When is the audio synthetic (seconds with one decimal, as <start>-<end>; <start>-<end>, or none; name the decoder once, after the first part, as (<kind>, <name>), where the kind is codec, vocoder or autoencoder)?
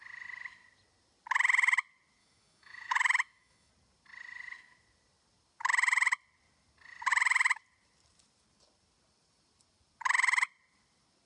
2.2-3.7 (autoencoder, DAC-VAE)